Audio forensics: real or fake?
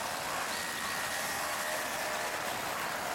real